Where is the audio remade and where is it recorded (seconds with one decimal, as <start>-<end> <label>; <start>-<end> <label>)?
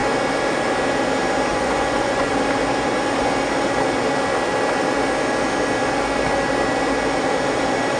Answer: 0.0-1.5 recorded; 1.5-2.3 remade; 2.3-8.0 recorded